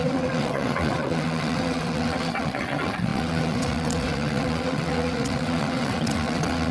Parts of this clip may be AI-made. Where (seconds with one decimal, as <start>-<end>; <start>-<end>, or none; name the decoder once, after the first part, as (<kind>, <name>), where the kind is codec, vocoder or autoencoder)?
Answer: 0.0-6.7 (vocoder, WaveNeXt)